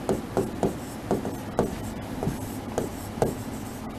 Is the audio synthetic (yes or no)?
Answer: yes